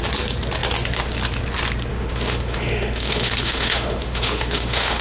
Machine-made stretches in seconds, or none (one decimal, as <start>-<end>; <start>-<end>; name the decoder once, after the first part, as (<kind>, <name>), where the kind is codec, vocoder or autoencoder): 1.9-5.0 (autoencoder, DAC-VAE)